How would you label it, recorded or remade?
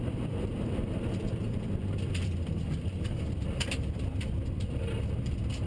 remade